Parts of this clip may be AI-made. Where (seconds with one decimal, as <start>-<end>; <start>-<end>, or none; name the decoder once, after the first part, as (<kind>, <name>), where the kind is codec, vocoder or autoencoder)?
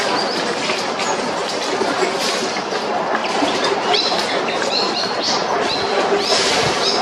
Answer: 2.2-2.8 (vocoder, BigVGAN v2); 3.2-5.2